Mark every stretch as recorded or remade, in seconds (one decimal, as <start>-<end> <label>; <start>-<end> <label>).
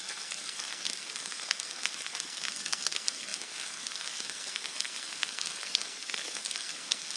0.0-7.2 remade